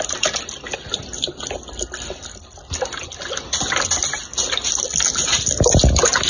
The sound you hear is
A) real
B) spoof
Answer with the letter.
A